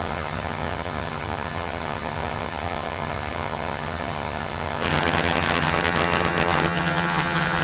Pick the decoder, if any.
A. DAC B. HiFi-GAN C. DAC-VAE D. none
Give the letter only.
B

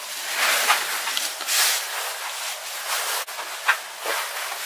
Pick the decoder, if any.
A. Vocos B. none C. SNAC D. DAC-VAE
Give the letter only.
B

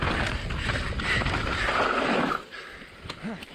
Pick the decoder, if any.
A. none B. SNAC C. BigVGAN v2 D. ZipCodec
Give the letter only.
A